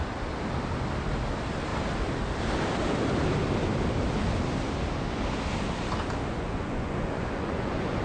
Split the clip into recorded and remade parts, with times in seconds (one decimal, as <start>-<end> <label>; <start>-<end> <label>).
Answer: 0.0-6.3 recorded; 6.3-8.0 remade